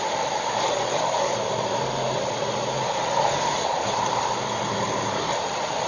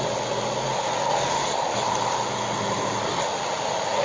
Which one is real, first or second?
second